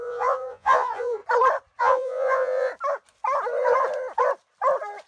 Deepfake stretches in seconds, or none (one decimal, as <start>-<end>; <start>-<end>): 0.0-1.2; 1.8-2.7